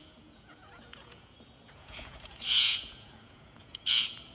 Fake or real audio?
fake